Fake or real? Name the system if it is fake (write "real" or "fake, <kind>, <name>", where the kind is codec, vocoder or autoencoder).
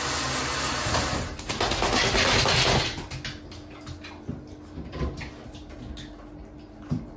real